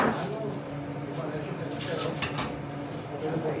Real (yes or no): yes